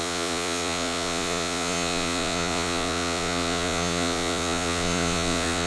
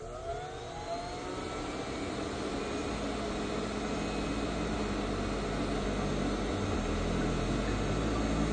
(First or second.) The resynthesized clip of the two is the first